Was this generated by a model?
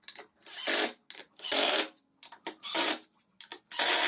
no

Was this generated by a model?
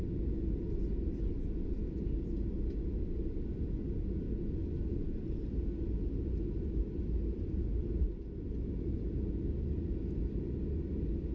no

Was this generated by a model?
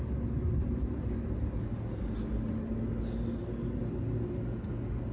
no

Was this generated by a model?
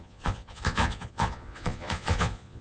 yes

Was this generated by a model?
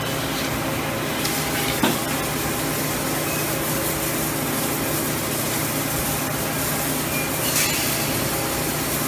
no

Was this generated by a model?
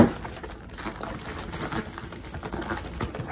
no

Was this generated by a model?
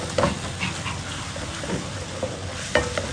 no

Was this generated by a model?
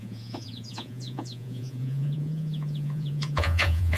yes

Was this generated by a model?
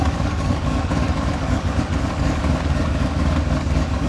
yes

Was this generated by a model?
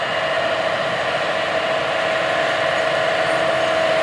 no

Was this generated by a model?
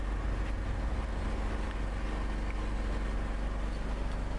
no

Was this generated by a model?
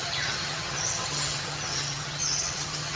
yes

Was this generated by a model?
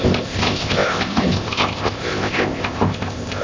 yes